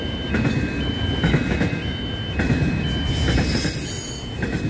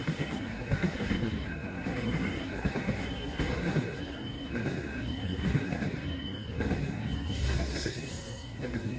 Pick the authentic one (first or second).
first